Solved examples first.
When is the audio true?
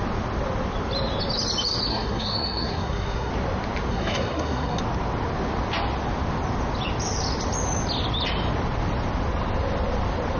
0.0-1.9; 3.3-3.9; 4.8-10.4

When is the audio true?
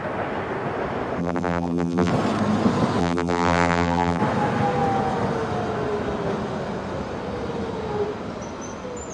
0.0-1.2; 2.1-3.0; 4.2-9.1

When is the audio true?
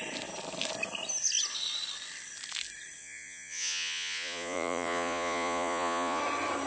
0.0-3.0; 6.2-6.7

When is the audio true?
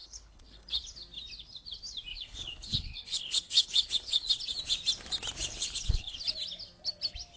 0.8-2.1; 4.3-5.4; 6.2-7.4